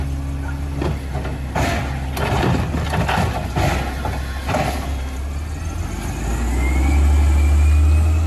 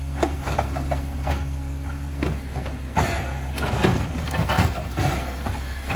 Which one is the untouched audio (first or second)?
first